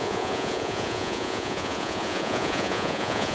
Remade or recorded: remade